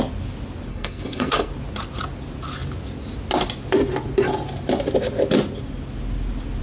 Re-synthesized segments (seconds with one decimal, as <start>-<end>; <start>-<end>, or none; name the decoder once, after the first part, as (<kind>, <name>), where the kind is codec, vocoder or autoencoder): 0.7-1.5 (codec, SNAC)